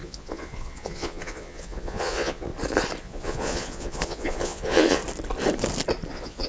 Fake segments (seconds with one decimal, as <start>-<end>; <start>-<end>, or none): 0.0-2.5; 3.0-5.0; 6.1-6.5

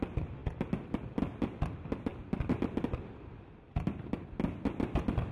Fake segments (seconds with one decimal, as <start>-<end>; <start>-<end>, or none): none

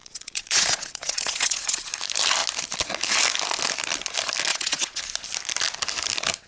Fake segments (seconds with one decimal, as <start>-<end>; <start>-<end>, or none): 0.0-1.9; 4.5-5.0

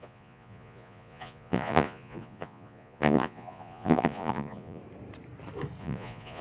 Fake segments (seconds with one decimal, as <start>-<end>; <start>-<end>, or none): 0.0-4.8; 5.8-6.4